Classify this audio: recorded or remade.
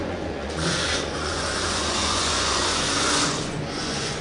remade